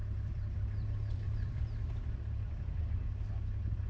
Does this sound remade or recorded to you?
remade